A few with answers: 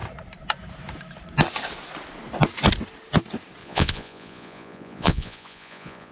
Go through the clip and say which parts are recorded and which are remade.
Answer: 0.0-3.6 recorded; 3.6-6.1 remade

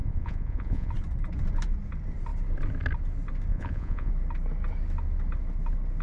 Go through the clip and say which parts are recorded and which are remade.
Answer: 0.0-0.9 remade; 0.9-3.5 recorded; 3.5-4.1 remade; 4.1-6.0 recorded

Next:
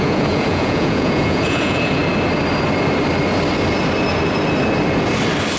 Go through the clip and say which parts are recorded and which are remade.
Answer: 0.0-2.0 remade; 2.0-5.6 recorded

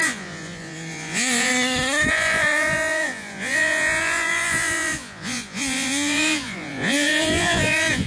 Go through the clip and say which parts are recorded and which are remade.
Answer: 0.0-1.5 remade; 1.5-2.1 recorded; 2.1-8.1 remade

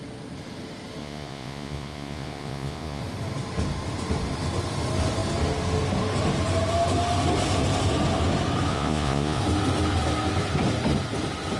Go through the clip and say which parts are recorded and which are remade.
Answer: 0.0-1.0 recorded; 1.0-3.0 remade; 3.0-8.7 recorded; 8.7-9.4 remade; 9.4-11.6 recorded

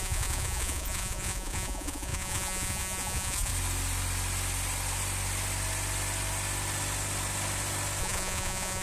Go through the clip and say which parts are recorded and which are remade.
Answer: 0.0-3.5 remade; 3.5-8.0 recorded; 8.0-8.8 remade